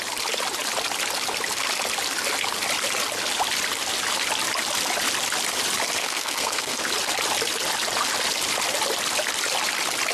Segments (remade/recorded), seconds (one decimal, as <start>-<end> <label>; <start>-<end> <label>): 0.0-6.0 recorded; 6.0-6.8 remade; 6.8-10.1 recorded